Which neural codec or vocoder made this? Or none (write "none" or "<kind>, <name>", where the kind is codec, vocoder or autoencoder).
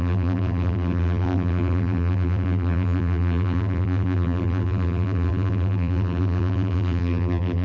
vocoder, BigVGAN v2